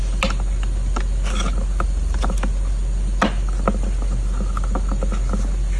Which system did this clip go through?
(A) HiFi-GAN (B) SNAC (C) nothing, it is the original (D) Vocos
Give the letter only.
C